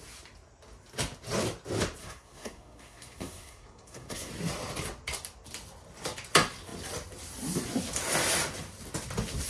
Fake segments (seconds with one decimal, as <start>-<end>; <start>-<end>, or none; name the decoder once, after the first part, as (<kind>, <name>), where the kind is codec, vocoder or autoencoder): 2.0-4.3 (codec, SNAC)